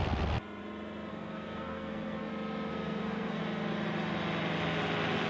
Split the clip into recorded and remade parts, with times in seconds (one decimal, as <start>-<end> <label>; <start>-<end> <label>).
0.0-1.1 recorded; 1.1-2.3 remade; 2.3-2.7 recorded; 2.7-3.4 remade; 3.4-5.3 recorded